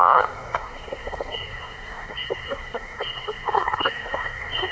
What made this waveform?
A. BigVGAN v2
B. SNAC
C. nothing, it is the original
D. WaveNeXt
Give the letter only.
B